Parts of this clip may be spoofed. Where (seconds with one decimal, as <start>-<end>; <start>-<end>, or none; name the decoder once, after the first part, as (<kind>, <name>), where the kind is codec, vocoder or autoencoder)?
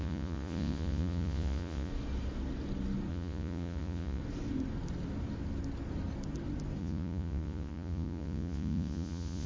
0.0-1.9 (vocoder, Vocos); 3.1-4.2; 6.8-9.5